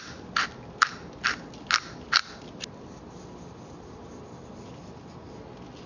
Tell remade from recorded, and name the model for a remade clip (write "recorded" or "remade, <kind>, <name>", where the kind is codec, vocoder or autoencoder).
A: recorded